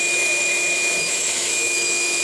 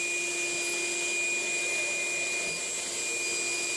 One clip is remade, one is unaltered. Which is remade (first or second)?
first